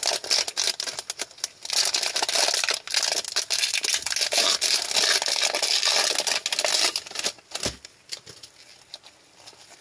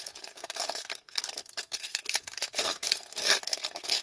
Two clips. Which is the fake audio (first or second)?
second